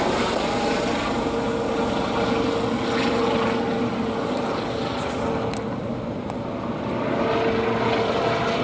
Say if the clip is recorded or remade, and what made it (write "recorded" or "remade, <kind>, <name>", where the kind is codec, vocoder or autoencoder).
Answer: recorded